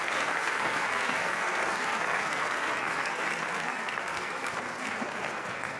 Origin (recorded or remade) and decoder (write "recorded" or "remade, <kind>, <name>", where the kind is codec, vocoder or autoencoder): remade, codec, SNAC